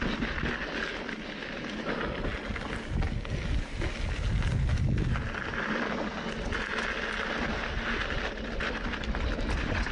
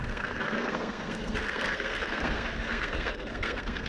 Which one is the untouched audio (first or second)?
first